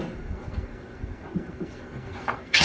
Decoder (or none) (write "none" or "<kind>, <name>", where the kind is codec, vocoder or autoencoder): codec, SNAC